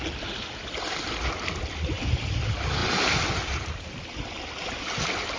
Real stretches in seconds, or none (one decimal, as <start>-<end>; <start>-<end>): 0.0-5.4